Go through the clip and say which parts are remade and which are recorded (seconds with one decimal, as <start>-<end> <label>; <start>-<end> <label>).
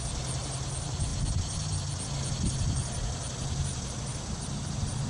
0.0-5.1 recorded